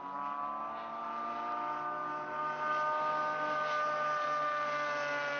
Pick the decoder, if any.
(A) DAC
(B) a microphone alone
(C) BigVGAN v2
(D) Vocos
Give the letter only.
B